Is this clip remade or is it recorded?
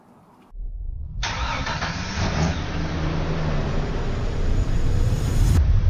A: remade